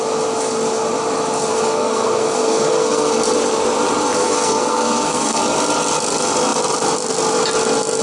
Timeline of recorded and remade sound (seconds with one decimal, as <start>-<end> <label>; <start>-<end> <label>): 0.0-1.5 recorded; 1.5-3.1 remade; 3.1-4.2 recorded; 4.2-5.4 remade; 5.4-8.0 recorded